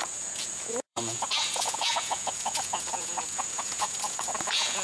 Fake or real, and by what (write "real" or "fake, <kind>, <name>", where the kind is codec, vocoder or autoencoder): fake, vocoder, Vocos